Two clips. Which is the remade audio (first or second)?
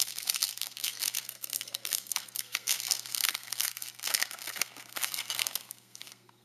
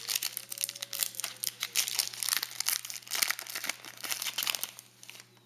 first